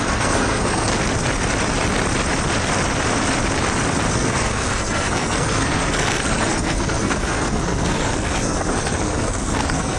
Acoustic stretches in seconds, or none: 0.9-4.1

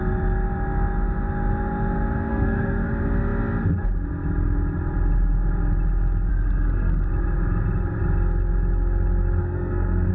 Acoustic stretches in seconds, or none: 0.0-2.3; 2.9-6.3; 7.1-9.4

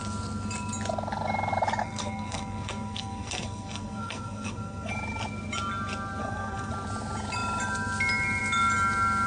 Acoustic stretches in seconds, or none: 0.0-1.8; 4.9-6.2; 6.7-9.3

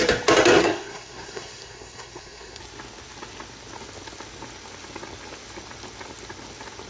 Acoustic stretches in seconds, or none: 0.0-0.6; 2.6-6.9

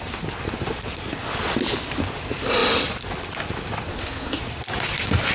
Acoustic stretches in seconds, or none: 0.0-3.9; 4.4-5.3

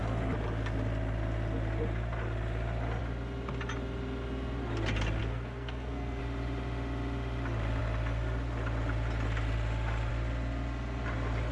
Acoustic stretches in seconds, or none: 0.0-5.2; 6.2-11.5